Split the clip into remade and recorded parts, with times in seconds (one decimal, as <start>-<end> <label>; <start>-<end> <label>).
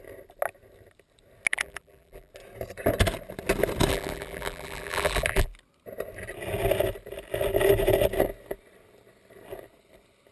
0.0-1.5 recorded; 1.5-2.3 remade; 2.3-3.9 recorded; 3.9-5.5 remade; 5.5-10.3 recorded